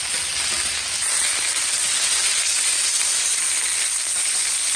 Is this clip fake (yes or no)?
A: no